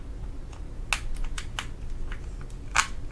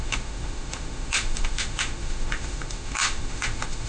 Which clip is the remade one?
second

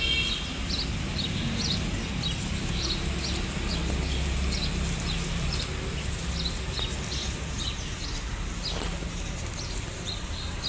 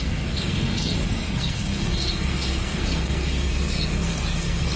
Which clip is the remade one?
second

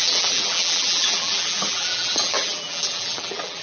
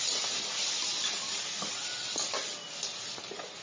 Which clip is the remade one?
first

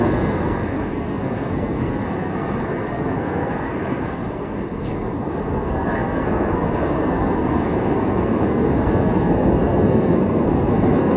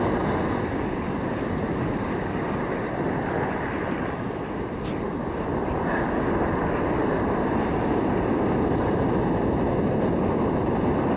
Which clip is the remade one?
first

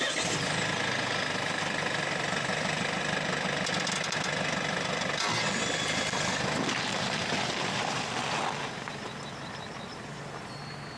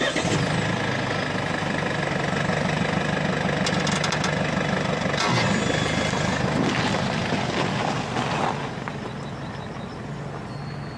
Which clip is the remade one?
first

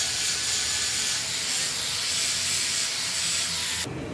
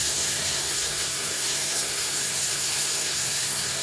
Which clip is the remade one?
second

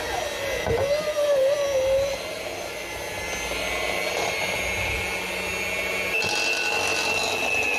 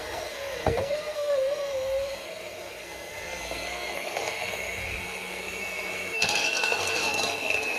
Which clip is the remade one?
second